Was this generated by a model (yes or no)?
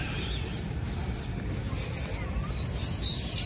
no